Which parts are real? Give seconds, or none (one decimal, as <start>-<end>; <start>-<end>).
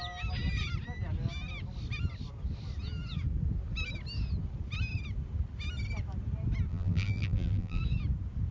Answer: 0.0-6.7; 7.8-8.5